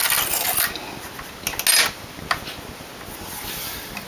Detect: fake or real real